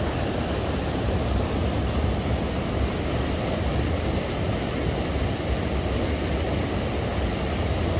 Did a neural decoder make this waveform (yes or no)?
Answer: no